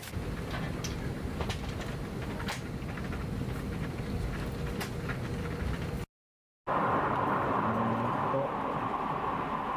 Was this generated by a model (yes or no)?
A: no